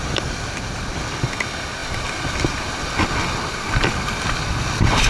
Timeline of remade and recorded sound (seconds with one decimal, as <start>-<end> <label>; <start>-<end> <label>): 0.0-5.1 recorded

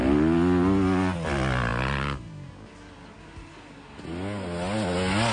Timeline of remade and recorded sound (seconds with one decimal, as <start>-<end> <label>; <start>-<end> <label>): 0.0-5.3 recorded